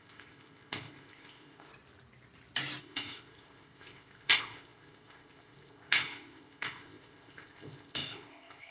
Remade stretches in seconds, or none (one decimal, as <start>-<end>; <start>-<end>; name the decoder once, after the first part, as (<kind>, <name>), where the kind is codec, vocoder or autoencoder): 0.0-1.7 (codec, ZipCodec); 2.8-8.7